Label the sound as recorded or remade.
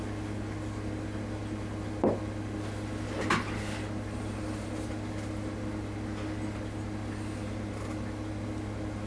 recorded